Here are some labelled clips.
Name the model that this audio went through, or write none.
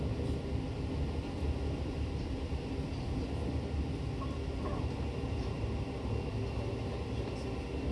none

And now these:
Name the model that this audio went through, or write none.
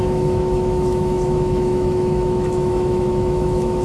autoencoder, DAC-VAE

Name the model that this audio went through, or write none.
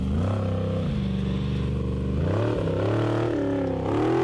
none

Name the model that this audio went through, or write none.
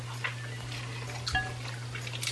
none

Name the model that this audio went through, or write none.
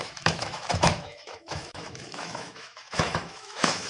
autoencoder, DAC-VAE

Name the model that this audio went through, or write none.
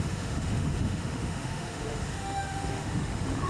autoencoder, DAC-VAE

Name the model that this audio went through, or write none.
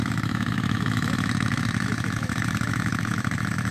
autoencoder, DAC-VAE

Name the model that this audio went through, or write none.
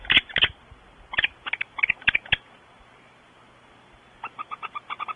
none